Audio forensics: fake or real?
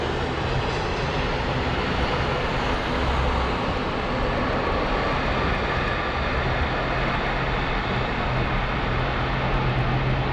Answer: real